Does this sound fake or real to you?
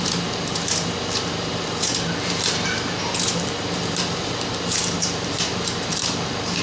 fake